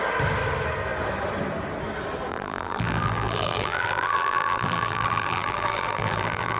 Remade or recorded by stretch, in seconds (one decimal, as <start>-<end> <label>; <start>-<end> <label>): 0.0-2.3 recorded; 2.3-6.6 remade